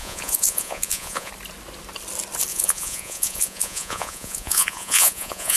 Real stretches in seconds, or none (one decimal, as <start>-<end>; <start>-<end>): 1.3-2.5